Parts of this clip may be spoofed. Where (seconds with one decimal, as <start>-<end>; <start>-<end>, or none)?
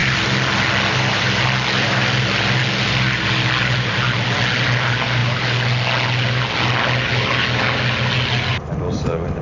none